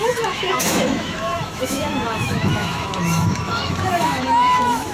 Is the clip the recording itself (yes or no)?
no